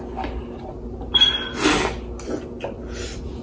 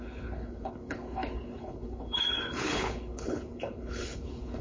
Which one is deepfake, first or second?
second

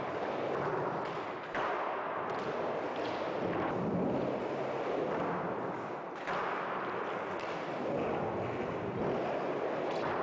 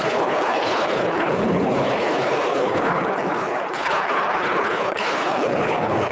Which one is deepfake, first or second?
second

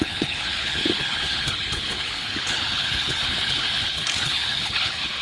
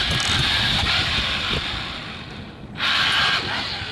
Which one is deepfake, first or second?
first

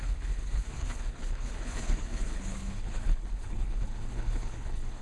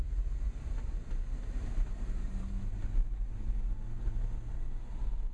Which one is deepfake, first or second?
first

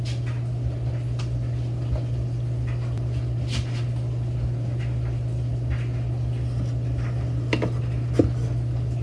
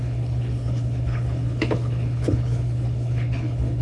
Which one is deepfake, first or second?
second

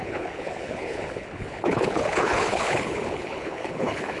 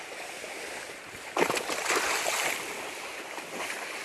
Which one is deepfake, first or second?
first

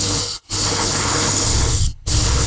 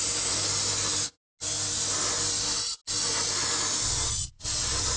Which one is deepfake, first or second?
first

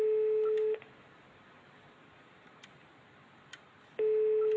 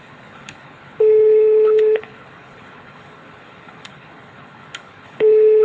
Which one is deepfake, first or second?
second